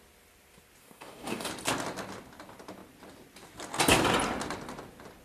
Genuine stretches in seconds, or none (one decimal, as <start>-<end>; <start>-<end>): 0.0-0.8; 1.5-5.2